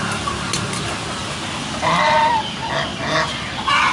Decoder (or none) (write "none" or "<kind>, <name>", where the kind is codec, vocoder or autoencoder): none